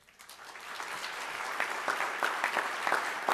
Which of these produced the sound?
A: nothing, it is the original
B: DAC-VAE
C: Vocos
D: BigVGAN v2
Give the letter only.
D